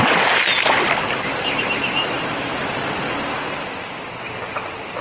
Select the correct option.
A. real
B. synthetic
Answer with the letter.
B